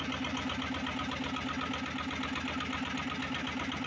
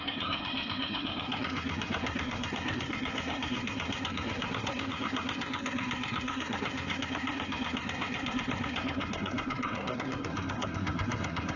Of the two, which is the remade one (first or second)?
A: second